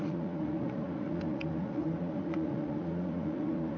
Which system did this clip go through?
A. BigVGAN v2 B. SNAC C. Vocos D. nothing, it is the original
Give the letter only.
C